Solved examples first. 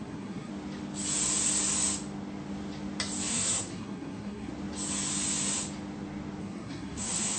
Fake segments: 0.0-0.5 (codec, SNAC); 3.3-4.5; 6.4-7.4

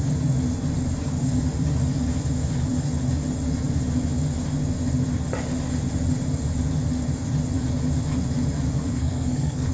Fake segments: 8.9-9.7 (codec, SNAC)

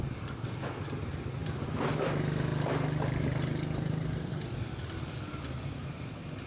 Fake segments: none

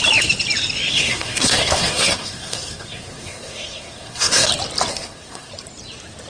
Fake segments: 0.9-4.5 (codec, SNAC); 4.9-5.5

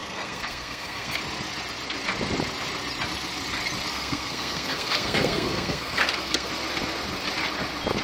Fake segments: 0.0-1.2 (codec, SNAC); 3.9-6.5

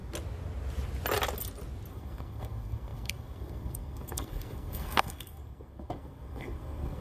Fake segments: 1.9-7.0 (codec, SNAC)

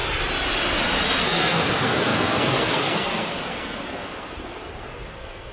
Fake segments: 1.2-5.5 (codec, SNAC)